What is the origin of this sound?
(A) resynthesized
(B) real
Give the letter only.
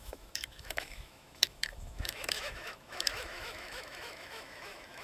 A